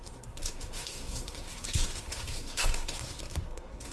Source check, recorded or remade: remade